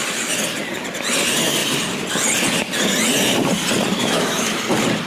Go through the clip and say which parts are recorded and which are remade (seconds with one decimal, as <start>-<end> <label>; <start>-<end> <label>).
0.0-4.0 recorded; 4.0-4.6 remade; 4.6-5.1 recorded